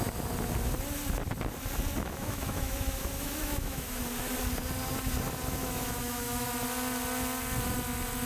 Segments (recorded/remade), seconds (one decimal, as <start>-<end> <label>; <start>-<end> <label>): 0.0-2.0 recorded; 2.0-4.0 remade; 4.0-5.6 recorded; 5.6-6.5 remade; 6.5-8.3 recorded